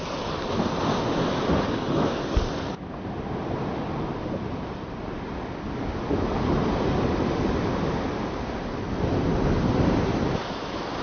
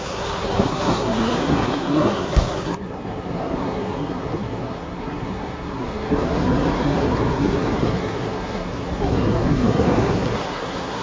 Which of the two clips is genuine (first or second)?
first